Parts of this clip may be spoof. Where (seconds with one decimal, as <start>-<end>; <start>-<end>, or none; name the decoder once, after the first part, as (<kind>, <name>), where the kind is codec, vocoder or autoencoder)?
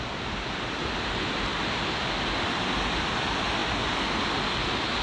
none